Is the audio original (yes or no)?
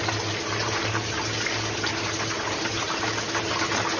yes